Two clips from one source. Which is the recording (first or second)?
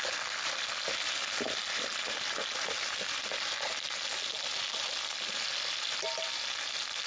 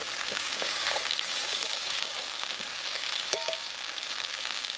first